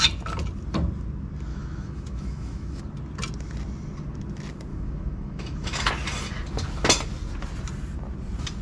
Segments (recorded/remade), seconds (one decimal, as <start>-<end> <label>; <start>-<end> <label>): 0.0-1.5 recorded; 1.5-2.8 remade; 2.8-4.7 recorded; 4.7-5.9 remade; 5.9-8.6 recorded